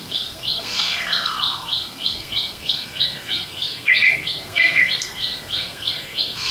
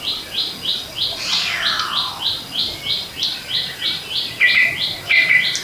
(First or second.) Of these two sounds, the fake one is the first